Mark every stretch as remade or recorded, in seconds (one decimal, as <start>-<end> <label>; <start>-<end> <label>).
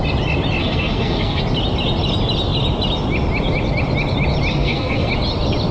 0.0-0.6 recorded; 0.6-1.4 remade; 1.4-4.5 recorded; 4.5-5.1 remade; 5.1-5.7 recorded